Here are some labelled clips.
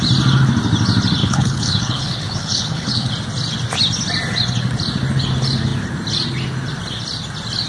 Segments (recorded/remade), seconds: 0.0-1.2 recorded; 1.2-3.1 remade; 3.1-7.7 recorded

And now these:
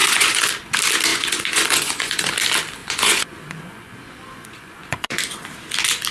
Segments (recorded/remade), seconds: 0.0-0.5 remade; 0.5-1.1 recorded; 1.1-2.3 remade; 2.3-2.8 recorded; 2.8-5.2 remade; 5.2-6.1 recorded

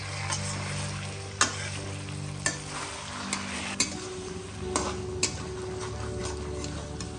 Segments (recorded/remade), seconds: 0.0-7.2 recorded

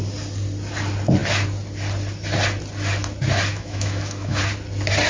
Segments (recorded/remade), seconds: 0.0-3.5 recorded; 3.5-4.4 remade; 4.4-5.1 recorded

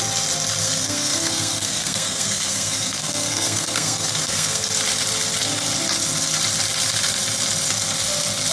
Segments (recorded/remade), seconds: 0.0-0.6 recorded; 0.6-4.7 remade; 4.7-8.5 recorded